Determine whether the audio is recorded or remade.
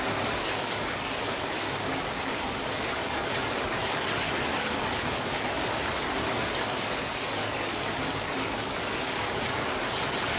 remade